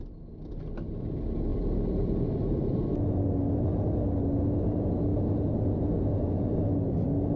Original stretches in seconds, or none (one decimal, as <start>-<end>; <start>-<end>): 0.0-1.5; 3.1-5.1; 5.8-7.4